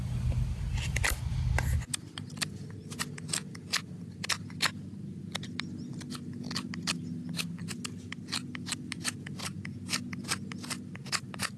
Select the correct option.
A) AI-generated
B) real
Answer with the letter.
B